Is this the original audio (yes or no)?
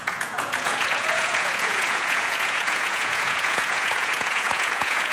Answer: no